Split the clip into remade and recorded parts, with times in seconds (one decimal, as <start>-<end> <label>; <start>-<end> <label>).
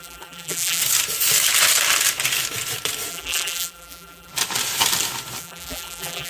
0.0-0.8 remade; 0.8-3.1 recorded; 3.1-4.3 remade; 4.3-5.4 recorded; 5.4-6.3 remade